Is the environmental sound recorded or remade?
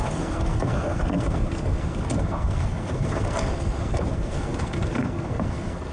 remade